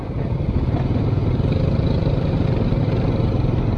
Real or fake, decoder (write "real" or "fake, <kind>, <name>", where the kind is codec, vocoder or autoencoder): fake, vocoder, BigVGAN v2